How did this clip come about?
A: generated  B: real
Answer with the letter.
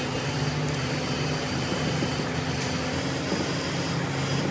B